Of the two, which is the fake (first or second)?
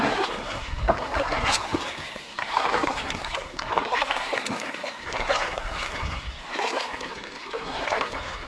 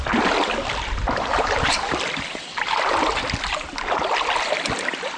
first